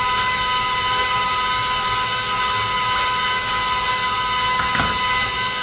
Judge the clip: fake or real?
real